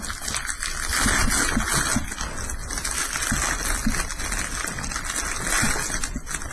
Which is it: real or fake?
real